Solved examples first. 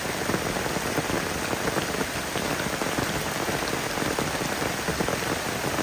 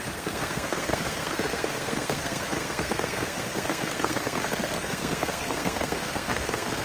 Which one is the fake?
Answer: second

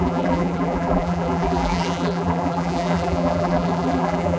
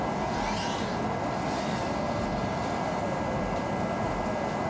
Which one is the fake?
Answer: first